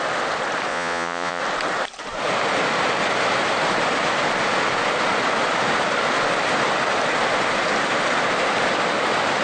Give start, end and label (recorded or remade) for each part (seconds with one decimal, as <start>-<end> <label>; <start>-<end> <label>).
0.0-0.7 recorded; 0.7-1.4 remade; 1.4-9.4 recorded